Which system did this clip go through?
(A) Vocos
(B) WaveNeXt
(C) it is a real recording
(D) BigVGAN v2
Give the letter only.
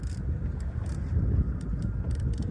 C